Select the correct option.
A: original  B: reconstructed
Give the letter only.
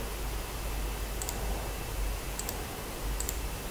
A